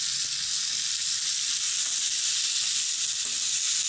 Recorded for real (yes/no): yes